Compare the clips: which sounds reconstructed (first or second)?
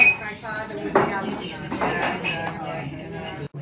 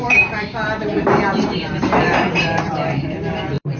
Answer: second